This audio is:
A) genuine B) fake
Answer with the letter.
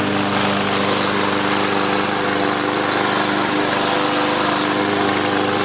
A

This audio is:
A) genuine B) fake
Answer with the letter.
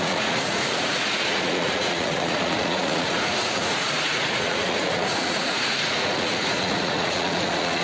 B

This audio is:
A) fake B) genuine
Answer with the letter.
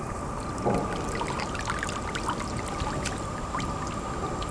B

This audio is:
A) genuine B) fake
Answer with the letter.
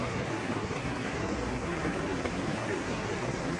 B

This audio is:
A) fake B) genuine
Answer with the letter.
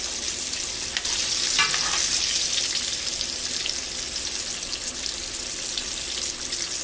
B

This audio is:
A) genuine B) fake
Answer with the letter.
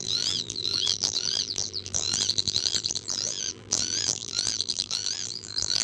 B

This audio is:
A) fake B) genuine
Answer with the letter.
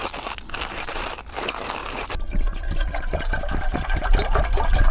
B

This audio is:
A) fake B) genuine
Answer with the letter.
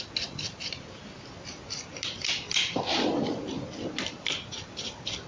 B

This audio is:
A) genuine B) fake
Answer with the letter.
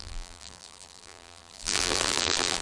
B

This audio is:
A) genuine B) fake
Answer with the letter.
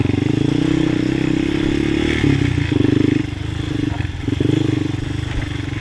A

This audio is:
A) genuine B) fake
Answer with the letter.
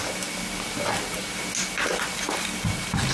A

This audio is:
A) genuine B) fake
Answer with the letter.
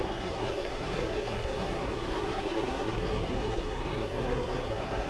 B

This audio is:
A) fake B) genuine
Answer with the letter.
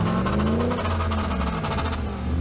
B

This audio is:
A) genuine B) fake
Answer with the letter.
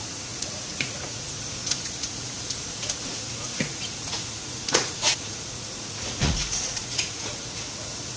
B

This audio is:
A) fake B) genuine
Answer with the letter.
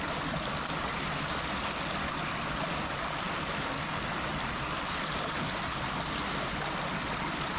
B